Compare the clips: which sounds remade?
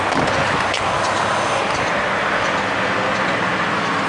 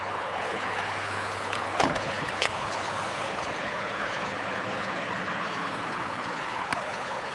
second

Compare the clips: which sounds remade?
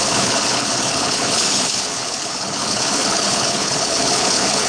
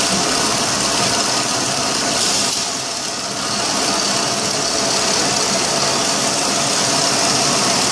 first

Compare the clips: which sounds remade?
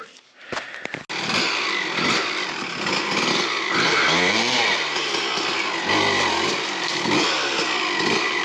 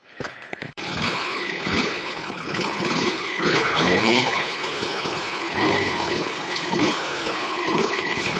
second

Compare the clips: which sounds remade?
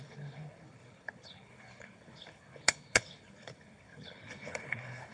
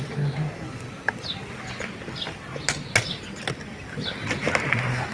first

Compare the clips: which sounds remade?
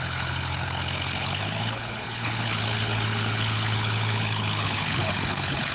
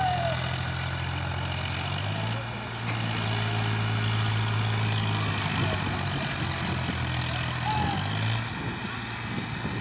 first